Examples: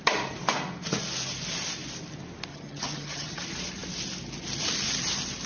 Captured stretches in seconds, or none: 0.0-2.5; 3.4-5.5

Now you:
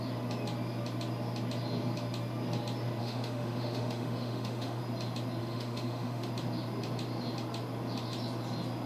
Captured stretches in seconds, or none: 0.0-3.0; 4.8-5.4; 6.3-8.9

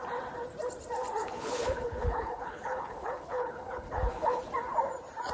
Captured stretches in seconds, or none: 0.0-1.2; 4.4-5.3

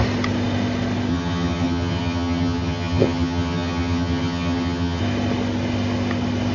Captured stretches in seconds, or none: 0.0-1.1; 5.0-6.5

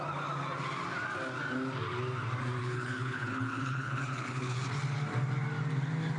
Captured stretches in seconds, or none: 0.0-2.6; 4.6-6.2

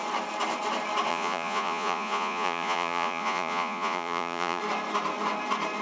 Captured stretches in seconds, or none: 0.0-1.1; 4.6-5.8

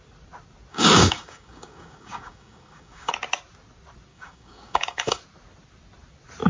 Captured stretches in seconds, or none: 0.0-0.7; 3.1-4.1; 5.2-6.5